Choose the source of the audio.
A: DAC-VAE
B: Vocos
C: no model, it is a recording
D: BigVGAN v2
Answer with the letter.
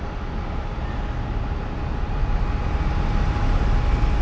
C